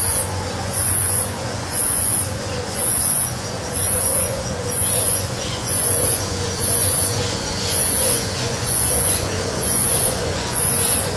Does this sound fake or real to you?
fake